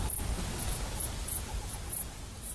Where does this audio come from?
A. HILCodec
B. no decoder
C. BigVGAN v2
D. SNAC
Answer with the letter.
B